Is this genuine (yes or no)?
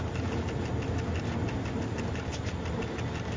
yes